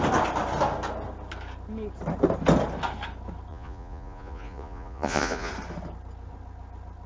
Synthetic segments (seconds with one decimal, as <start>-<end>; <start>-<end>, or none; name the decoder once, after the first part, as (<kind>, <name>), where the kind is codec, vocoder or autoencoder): 3.5-5.5 (vocoder, Vocos)